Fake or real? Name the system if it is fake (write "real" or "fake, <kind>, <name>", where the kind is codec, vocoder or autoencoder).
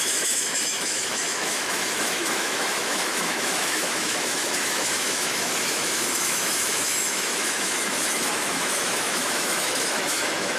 fake, autoencoder, DAC-VAE